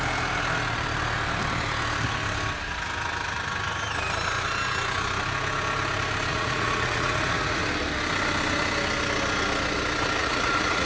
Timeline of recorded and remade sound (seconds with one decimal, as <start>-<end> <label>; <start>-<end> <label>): 0.0-6.3 recorded; 6.3-7.6 remade; 7.6-10.2 recorded; 10.2-10.9 remade